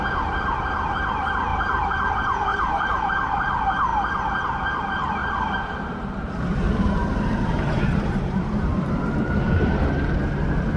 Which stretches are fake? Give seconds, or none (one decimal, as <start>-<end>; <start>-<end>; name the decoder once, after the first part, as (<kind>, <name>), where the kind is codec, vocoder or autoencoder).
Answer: 1.5-2.1 (vocoder, BigVGAN v2); 2.5-3.1; 5.2-9.7

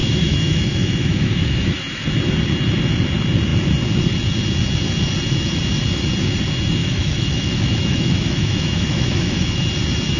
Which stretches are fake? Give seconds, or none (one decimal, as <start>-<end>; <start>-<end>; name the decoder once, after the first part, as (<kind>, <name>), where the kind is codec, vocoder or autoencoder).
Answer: 0.0-1.8 (autoencoder, DAC-VAE); 6.8-9.6

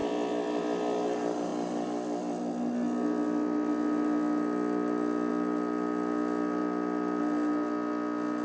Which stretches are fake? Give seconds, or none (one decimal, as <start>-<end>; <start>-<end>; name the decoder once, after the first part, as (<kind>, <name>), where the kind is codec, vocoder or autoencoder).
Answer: none